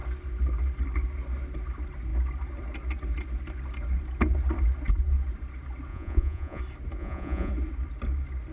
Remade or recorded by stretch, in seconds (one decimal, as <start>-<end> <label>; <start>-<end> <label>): 0.0-5.9 recorded; 5.9-6.6 remade; 6.6-7.0 recorded; 7.0-7.5 remade; 7.5-8.5 recorded